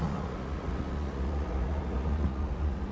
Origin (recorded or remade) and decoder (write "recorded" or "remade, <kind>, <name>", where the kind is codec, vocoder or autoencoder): remade, vocoder, Vocos